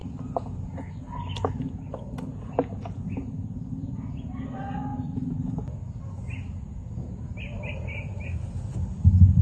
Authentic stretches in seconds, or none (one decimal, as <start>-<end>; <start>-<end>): 0.0-2.3; 4.3-9.4